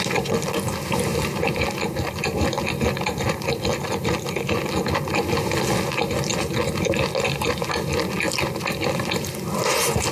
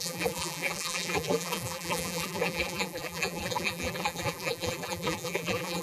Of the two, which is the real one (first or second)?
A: first